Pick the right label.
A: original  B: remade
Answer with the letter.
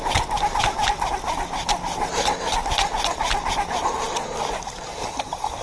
A